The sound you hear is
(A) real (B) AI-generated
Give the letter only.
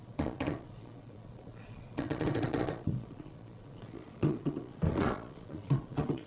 B